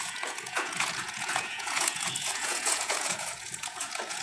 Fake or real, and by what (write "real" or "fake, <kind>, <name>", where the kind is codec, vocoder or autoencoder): fake, vocoder, Vocos